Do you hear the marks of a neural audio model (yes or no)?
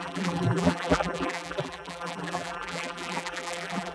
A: yes